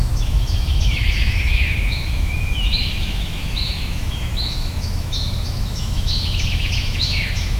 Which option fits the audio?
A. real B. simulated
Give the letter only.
B